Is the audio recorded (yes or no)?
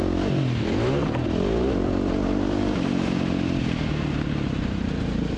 yes